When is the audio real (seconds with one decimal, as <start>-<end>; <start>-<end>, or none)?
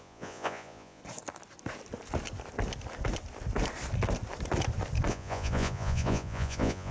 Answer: 1.0-5.1